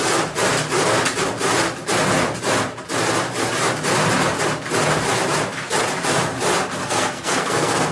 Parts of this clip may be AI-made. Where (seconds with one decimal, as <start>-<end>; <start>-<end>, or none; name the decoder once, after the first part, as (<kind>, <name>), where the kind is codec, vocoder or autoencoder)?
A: 6.8-7.9 (codec, SNAC)